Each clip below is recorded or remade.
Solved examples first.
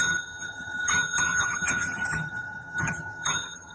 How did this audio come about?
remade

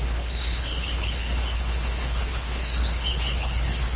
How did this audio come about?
remade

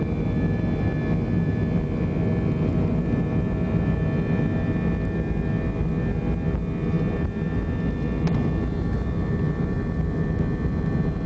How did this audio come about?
recorded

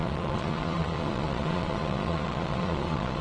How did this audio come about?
remade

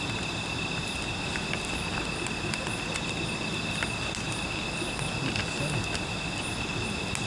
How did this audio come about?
recorded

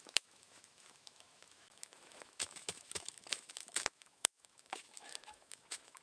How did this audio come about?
remade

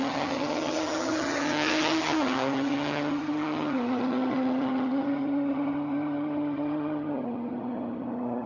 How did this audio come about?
remade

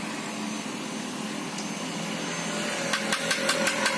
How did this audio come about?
recorded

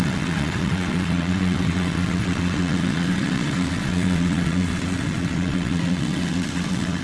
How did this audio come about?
remade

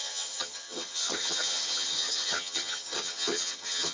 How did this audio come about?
remade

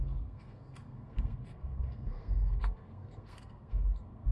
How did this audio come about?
remade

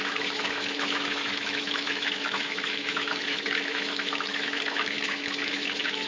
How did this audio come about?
remade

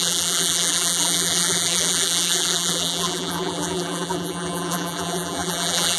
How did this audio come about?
remade